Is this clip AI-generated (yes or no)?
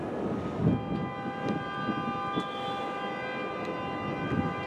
no